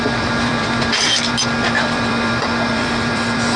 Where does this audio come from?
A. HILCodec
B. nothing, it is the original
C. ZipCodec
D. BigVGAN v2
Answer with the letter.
D